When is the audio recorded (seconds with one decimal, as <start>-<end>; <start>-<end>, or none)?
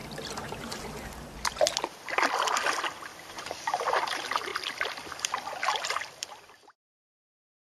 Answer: 0.8-3.1; 4.0-4.5; 6.4-7.8